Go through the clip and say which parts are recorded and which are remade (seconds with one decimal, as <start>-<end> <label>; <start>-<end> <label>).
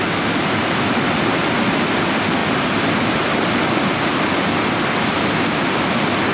0.0-6.3 recorded